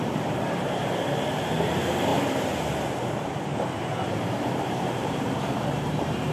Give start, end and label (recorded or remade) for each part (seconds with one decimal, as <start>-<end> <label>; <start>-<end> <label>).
0.0-0.8 remade; 0.8-1.7 recorded; 1.7-6.3 remade